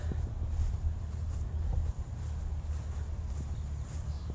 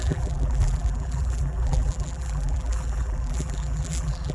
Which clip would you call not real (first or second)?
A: second